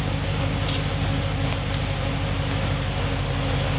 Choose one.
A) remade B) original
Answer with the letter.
B